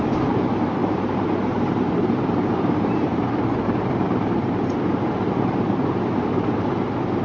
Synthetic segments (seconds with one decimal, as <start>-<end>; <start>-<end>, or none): 0.0-7.2